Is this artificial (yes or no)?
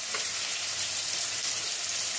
yes